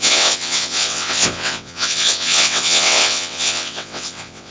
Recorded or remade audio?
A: remade